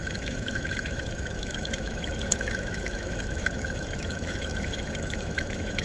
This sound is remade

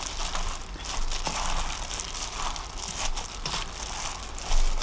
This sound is recorded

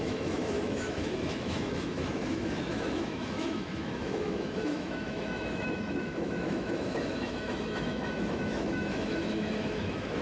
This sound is remade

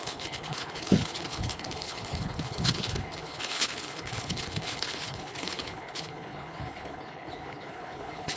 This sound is remade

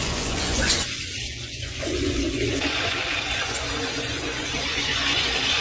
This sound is remade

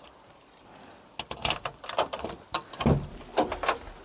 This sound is recorded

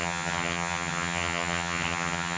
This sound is remade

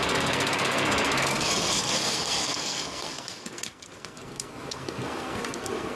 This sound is remade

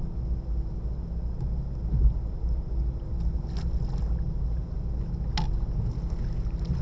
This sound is recorded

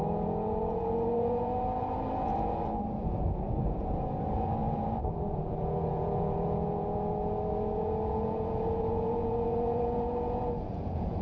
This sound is remade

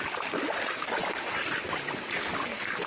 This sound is recorded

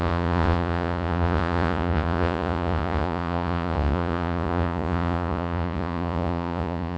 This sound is remade